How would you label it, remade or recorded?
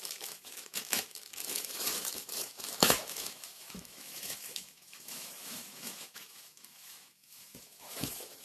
remade